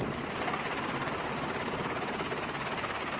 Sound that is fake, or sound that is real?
real